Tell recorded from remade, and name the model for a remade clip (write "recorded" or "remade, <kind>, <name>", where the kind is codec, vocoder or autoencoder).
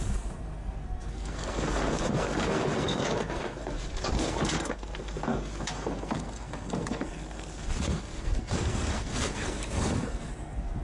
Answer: remade, codec, SNAC